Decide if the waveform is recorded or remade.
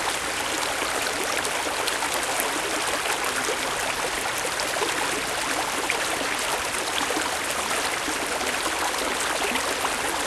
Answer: recorded